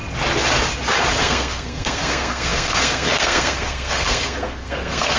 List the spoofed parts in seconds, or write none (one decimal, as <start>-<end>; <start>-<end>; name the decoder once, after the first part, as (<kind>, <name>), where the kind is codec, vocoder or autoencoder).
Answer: 1.2-5.2 (codec, SNAC)